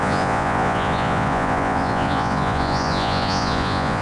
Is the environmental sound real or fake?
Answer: fake